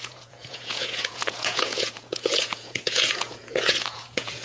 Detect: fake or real fake